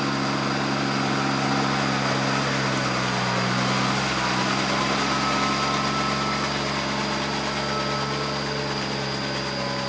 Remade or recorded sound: recorded